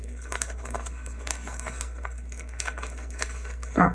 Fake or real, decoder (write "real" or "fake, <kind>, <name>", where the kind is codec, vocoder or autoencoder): fake, codec, SNAC